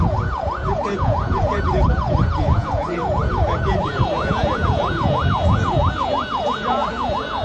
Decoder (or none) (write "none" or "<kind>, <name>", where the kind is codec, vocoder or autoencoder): vocoder, Vocos